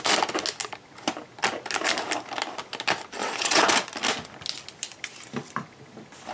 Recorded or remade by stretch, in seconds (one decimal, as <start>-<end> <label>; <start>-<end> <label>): 0.0-3.2 recorded; 3.2-3.7 remade; 3.7-6.3 recorded